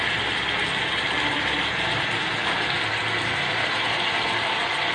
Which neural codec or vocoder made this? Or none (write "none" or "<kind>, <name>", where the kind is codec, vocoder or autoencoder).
none